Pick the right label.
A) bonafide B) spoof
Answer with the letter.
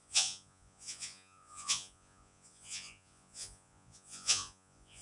B